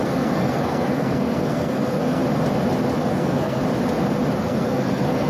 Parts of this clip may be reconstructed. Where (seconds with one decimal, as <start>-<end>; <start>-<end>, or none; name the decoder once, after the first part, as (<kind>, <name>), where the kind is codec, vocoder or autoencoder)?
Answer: 0.0-2.2 (codec, SNAC); 3.1-3.6; 4.4-5.3

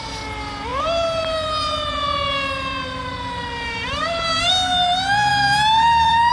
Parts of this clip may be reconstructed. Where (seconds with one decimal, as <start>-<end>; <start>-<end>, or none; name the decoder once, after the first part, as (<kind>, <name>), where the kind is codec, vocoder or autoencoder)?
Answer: 0.7-4.5 (vocoder, BigVGAN v2); 5.3-6.3

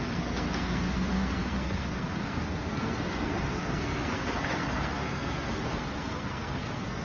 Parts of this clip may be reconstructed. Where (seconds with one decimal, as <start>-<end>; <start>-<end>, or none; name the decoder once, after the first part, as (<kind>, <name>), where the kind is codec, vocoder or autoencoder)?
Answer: 0.0-7.0 (codec, SNAC)

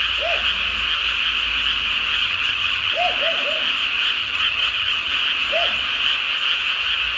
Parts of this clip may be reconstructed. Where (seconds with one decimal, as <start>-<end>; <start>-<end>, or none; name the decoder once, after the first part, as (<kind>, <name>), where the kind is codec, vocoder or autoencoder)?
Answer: 2.2-2.9 (vocoder, HiFi-GAN); 4.2-5.1

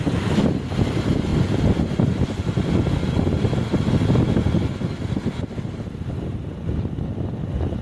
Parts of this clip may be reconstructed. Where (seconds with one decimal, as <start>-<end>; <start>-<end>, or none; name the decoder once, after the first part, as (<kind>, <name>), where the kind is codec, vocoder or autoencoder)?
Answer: none

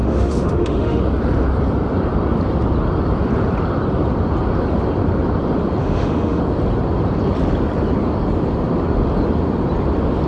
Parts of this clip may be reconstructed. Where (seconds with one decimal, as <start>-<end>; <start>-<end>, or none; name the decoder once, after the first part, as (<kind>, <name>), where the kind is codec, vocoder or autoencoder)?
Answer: 0.0-1.0 (autoencoder, DAC-VAE); 5.8-6.4

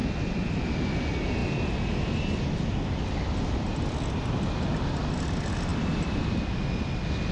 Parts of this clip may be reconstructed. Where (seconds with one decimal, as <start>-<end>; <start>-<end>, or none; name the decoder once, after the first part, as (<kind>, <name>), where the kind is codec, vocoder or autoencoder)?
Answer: none